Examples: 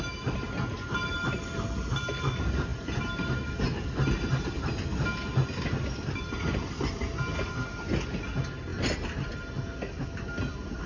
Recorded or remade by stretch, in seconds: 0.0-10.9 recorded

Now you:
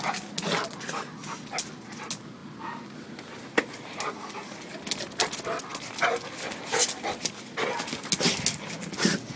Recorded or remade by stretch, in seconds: 0.0-9.4 recorded

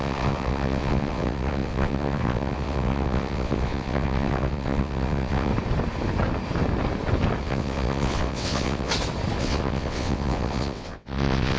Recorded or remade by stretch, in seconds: 0.0-5.5 remade; 5.5-7.4 recorded; 7.4-8.9 remade; 8.9-9.4 recorded; 9.4-11.6 remade

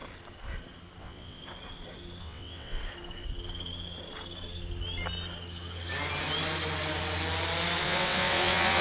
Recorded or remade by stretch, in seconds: 0.0-1.0 recorded; 1.0-1.4 remade; 1.4-2.2 recorded; 2.2-2.8 remade; 2.8-7.8 recorded; 7.8-8.8 remade